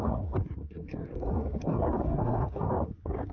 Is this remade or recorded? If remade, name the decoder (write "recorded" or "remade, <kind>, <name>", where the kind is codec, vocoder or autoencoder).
remade, codec, SNAC